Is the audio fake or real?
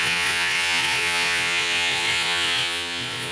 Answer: fake